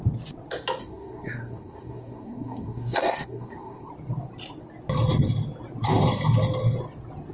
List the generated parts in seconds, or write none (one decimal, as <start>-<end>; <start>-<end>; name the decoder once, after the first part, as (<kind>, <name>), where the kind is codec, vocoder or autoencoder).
0.8-3.9 (codec, SNAC)

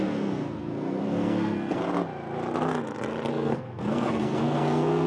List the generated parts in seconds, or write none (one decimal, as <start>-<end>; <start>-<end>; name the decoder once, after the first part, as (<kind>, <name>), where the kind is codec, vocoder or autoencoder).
0.0-1.8 (codec, SNAC); 3.3-5.1

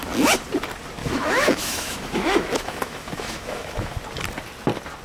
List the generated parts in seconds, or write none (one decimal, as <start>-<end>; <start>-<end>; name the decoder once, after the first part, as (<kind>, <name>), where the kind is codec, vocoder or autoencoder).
1.0-4.0 (autoencoder, DAC-VAE)